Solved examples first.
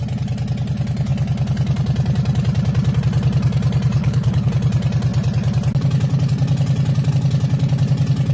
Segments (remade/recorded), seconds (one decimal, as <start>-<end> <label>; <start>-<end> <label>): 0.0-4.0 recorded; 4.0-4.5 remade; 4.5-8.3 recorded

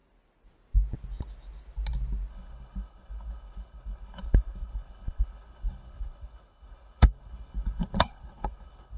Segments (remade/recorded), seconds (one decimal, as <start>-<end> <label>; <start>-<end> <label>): 0.0-2.3 recorded; 2.3-9.0 remade

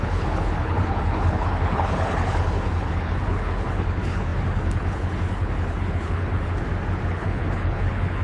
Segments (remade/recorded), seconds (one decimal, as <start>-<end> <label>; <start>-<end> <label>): 0.0-6.5 remade; 6.5-7.1 recorded; 7.1-8.2 remade